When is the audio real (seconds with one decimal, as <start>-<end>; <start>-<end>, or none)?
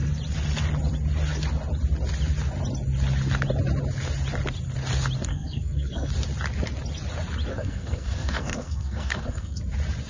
0.0-5.3; 6.1-7.5; 9.6-10.1